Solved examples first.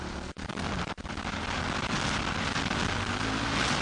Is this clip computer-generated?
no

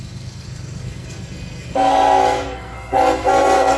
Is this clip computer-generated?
yes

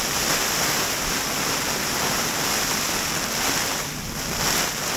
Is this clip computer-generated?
no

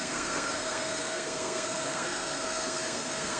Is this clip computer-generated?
yes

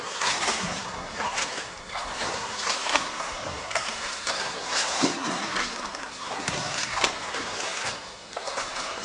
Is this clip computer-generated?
yes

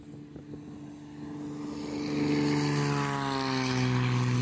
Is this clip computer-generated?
no